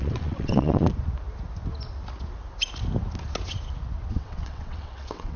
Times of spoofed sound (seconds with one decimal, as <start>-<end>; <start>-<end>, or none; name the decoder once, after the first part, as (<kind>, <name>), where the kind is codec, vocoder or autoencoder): 0.0-0.9 (vocoder, WaveNeXt); 4.1-5.4